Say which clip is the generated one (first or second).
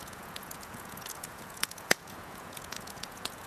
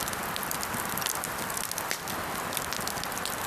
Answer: first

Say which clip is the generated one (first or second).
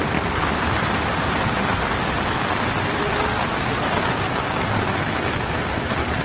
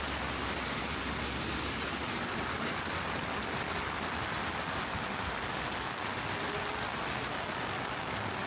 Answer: first